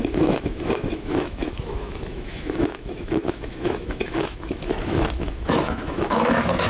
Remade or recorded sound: remade